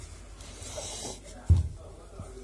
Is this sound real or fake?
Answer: real